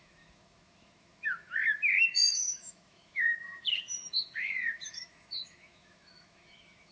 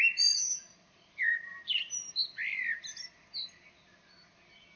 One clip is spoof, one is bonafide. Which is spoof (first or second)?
first